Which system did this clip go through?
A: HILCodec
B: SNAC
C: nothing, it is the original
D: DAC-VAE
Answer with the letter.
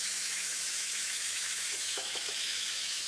D